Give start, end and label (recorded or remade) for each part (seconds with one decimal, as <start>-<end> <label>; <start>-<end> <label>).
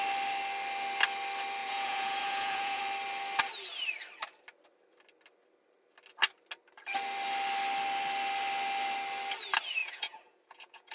0.0-1.6 recorded; 1.6-2.8 remade; 2.8-9.8 recorded; 9.8-10.9 remade